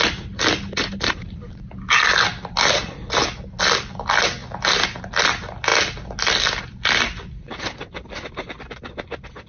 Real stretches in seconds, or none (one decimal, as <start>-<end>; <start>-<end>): 0.0-9.5